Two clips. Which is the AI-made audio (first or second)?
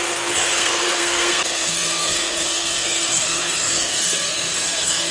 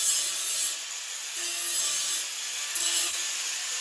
first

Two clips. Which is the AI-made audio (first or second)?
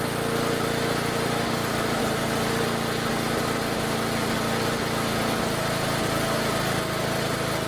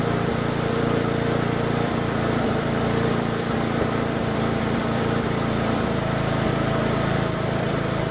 second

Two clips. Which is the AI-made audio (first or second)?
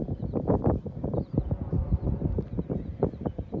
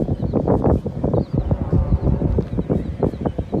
first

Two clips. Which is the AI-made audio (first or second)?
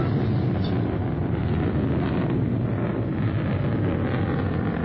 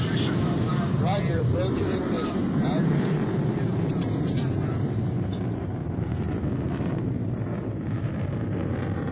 second